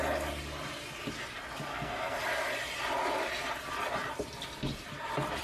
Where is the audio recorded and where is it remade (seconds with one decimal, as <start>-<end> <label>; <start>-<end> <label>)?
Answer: 0.0-1.7 recorded; 1.7-2.2 remade; 2.2-5.4 recorded